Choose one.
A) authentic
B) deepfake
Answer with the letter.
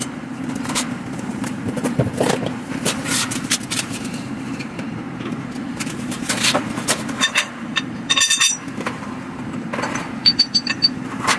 B